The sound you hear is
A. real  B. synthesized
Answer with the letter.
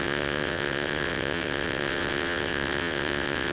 B